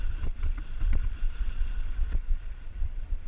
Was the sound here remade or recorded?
remade